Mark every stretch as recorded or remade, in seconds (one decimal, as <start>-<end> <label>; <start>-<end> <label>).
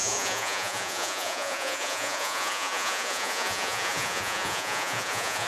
0.0-5.5 remade